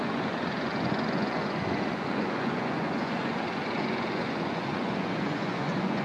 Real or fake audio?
fake